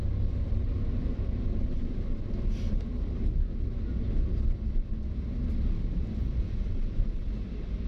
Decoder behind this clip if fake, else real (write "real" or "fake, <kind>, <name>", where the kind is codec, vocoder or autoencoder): real